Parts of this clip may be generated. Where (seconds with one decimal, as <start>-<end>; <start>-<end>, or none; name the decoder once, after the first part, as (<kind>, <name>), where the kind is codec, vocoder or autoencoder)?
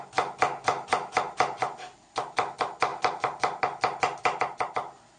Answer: none